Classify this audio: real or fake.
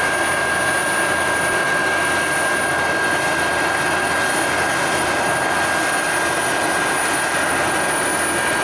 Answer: real